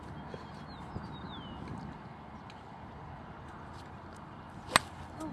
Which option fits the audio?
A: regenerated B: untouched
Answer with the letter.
B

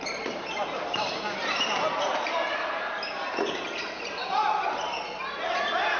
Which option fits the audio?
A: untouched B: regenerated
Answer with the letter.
B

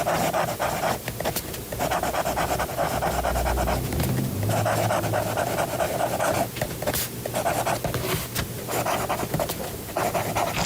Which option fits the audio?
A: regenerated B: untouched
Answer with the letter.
B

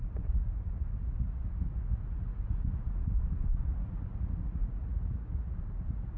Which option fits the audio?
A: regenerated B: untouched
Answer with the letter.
A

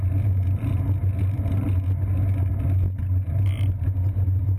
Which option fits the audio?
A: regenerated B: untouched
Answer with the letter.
B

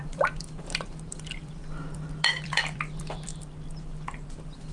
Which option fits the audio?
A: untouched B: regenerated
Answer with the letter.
B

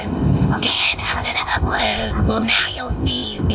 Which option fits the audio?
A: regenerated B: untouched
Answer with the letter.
A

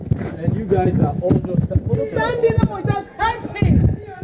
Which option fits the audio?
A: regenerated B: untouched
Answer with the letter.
B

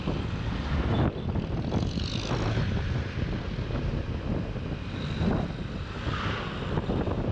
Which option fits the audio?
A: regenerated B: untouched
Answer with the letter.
B